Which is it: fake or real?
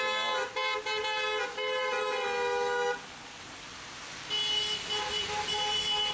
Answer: real